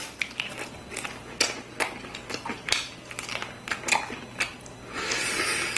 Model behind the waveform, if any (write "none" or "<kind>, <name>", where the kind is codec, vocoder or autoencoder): none